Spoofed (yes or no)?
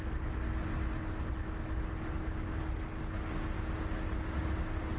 no